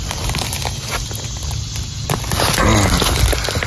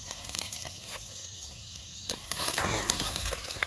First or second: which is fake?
second